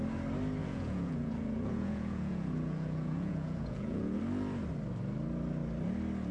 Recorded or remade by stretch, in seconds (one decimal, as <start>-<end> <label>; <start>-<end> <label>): 0.0-0.6 recorded; 0.6-4.2 remade; 4.2-6.3 recorded